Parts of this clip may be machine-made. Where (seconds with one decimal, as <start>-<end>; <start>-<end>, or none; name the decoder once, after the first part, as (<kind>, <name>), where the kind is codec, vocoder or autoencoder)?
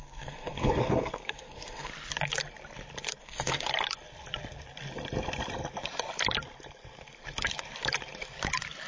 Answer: 0.0-1.9 (codec, SNAC); 3.2-3.7